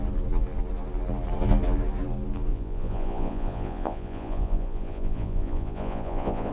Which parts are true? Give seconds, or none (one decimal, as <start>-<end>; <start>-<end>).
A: 0.0-2.5